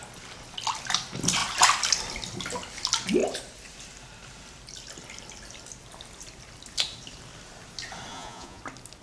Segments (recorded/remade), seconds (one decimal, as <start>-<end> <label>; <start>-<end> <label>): 0.0-8.1 recorded; 8.1-8.6 remade; 8.6-9.0 recorded

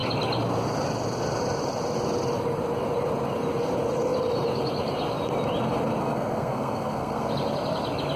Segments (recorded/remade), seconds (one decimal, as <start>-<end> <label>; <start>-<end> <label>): 0.0-6.0 recorded; 6.0-7.3 remade; 7.3-8.2 recorded

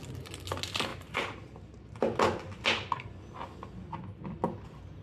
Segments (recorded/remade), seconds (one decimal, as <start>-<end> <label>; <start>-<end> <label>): 0.0-0.9 recorded; 0.9-2.0 remade; 2.0-5.0 recorded

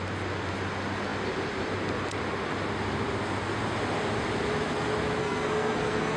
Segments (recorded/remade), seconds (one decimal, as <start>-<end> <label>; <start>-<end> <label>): 0.0-5.2 recorded; 5.2-6.2 remade

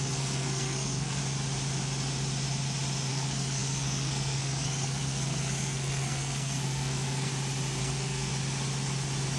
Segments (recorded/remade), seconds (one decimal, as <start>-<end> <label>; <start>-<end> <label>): 0.0-1.2 remade; 1.2-3.1 recorded; 3.1-7.3 remade; 7.3-7.8 recorded; 7.8-8.3 remade; 8.3-9.4 recorded

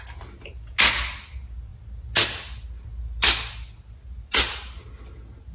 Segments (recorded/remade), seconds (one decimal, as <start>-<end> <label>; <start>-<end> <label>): 0.0-5.5 recorded